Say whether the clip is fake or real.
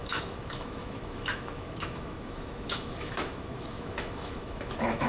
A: fake